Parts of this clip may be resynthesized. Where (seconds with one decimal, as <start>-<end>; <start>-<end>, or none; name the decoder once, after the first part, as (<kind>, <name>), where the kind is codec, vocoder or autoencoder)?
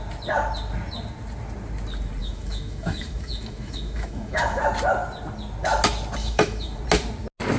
2.2-4.6 (autoencoder, DAC-VAE); 6.2-6.8